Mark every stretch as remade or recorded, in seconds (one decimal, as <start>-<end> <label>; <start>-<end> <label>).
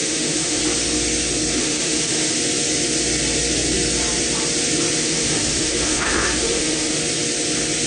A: 0.0-0.6 remade; 0.6-1.6 recorded; 1.6-2.4 remade; 2.4-5.0 recorded; 5.0-7.0 remade; 7.0-7.9 recorded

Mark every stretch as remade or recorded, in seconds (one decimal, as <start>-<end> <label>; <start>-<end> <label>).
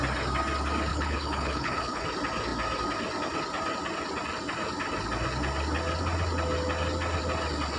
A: 0.0-0.9 recorded; 0.9-2.0 remade; 2.0-7.8 recorded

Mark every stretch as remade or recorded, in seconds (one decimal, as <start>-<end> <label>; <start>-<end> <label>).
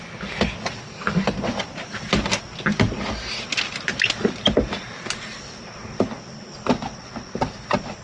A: 0.0-8.0 recorded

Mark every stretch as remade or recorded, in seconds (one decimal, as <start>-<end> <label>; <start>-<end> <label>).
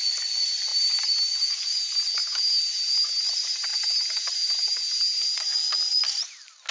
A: 0.0-6.7 recorded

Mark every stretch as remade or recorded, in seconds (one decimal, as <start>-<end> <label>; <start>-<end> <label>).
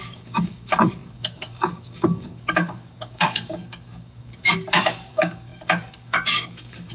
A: 0.0-6.9 remade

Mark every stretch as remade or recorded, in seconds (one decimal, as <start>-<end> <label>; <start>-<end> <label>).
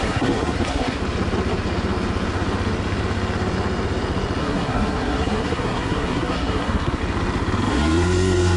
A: 0.0-1.0 remade; 1.0-4.4 recorded; 4.4-7.0 remade; 7.0-7.7 recorded; 7.7-8.6 remade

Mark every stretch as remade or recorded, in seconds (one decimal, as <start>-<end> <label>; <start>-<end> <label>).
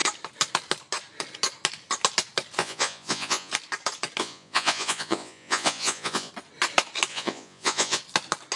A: 0.0-2.6 recorded; 2.6-3.5 remade; 3.5-4.2 recorded; 4.2-6.3 remade; 6.3-7.1 recorded; 7.1-8.0 remade; 8.0-8.6 recorded